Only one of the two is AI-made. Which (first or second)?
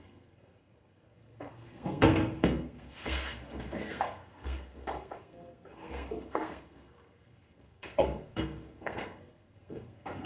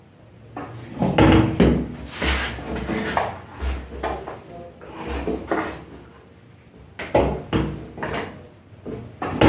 first